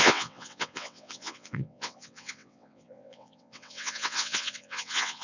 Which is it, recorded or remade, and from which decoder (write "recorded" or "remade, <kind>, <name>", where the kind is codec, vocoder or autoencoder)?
remade, vocoder, WaveNeXt